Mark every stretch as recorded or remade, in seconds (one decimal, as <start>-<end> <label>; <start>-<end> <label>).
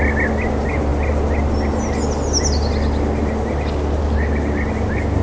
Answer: 0.0-5.2 recorded